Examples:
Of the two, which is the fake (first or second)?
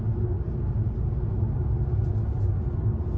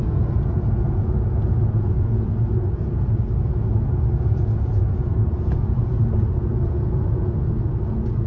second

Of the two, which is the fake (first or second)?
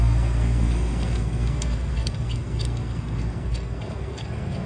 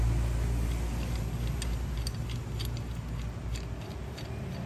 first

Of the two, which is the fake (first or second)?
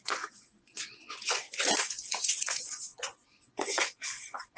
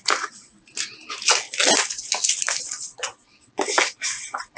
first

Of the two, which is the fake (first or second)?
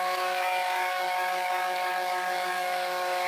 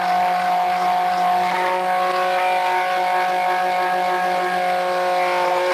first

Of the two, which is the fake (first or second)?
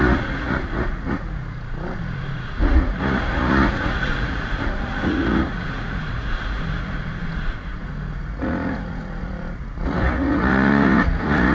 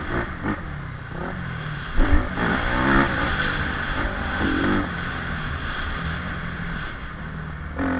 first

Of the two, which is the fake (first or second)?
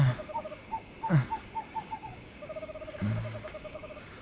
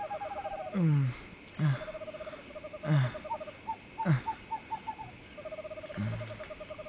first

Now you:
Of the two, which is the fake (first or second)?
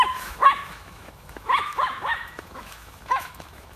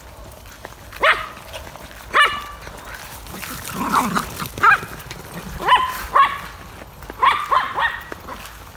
first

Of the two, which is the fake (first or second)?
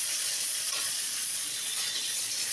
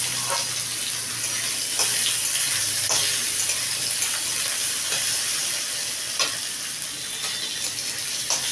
first